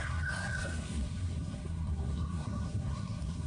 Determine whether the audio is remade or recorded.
remade